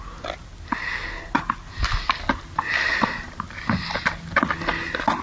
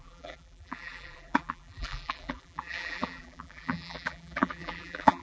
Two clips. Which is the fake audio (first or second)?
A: second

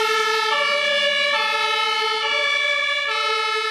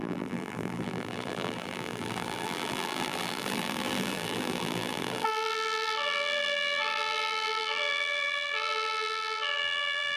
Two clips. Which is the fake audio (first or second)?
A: second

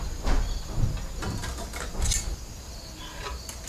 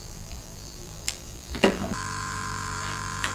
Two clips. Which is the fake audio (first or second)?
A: second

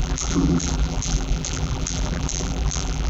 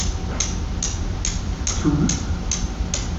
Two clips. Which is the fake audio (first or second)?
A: first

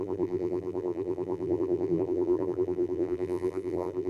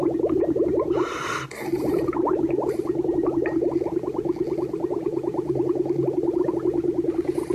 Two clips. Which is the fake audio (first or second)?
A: first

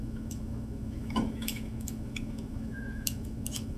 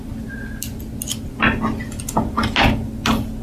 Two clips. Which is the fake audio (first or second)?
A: first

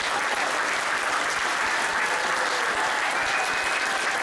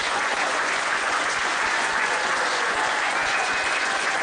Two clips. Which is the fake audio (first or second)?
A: second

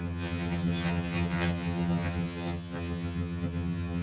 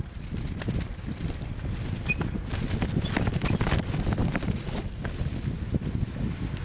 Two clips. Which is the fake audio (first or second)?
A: first